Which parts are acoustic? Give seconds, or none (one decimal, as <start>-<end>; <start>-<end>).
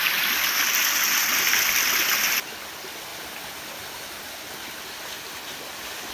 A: 0.0-6.1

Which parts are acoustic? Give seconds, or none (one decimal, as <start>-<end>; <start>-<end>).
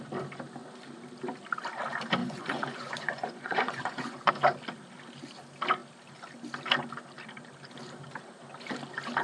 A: 0.0-2.2; 4.3-9.2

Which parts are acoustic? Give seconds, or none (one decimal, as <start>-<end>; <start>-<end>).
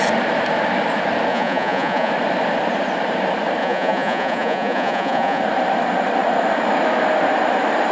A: 0.0-1.3; 2.1-3.6; 5.4-7.9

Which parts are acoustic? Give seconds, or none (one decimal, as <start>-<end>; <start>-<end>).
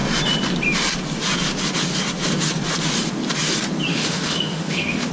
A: 0.0-3.9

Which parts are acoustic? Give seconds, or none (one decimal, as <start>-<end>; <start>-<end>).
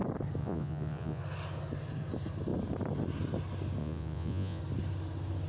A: 0.0-0.4; 1.2-3.8; 4.6-5.5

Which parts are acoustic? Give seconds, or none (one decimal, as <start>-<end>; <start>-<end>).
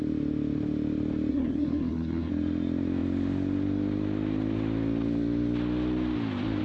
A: 0.0-1.3; 2.3-6.6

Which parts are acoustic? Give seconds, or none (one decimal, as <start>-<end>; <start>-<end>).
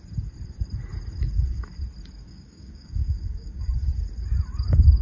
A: 0.0-2.2; 3.7-5.0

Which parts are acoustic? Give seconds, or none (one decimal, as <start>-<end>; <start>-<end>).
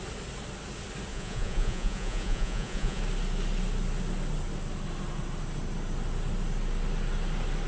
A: 0.0-1.1; 3.0-7.7